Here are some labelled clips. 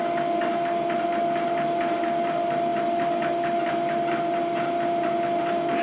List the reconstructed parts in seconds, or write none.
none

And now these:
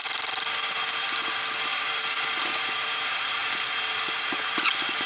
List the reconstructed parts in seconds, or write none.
1.6-5.1